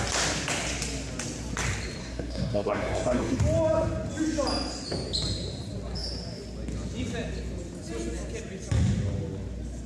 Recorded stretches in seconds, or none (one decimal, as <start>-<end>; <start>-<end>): 0.0-2.0; 3.4-9.9